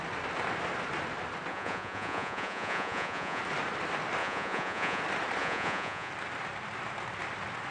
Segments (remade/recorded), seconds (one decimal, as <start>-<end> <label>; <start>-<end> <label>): 0.0-1.5 recorded; 1.5-3.4 remade; 3.4-4.2 recorded; 4.2-5.0 remade; 5.0-5.4 recorded; 5.4-6.1 remade; 6.1-7.7 recorded

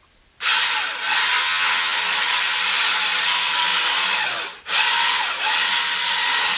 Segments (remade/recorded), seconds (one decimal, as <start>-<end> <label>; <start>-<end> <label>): 0.0-1.4 recorded; 1.4-2.0 remade; 2.0-6.6 recorded

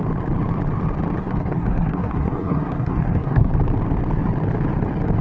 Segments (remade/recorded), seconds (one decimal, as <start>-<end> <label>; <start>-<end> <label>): 0.0-1.2 recorded; 1.2-3.5 remade; 3.5-5.2 recorded

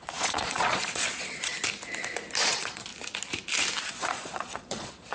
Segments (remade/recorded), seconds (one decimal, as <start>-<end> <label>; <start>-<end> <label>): 0.0-1.5 remade; 1.5-2.5 recorded; 2.5-2.9 remade; 2.9-3.9 recorded; 3.9-5.1 remade